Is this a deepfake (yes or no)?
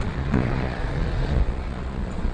yes